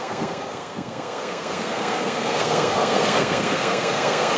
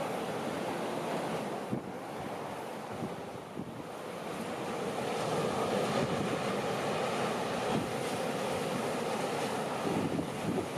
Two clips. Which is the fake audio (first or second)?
first